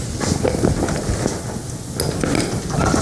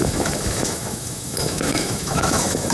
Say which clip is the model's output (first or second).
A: second